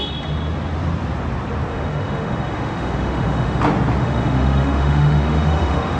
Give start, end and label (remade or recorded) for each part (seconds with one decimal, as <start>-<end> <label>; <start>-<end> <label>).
0.0-1.7 recorded; 1.7-3.6 remade; 3.6-4.0 recorded; 4.0-6.0 remade